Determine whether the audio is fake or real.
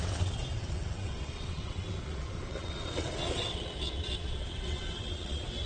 fake